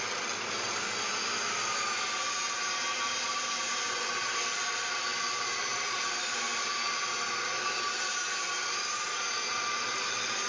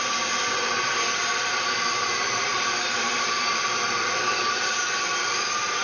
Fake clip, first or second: second